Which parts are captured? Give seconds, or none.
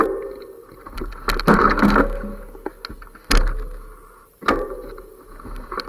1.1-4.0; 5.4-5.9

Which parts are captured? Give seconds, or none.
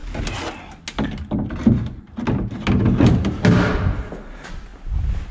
0.0-5.3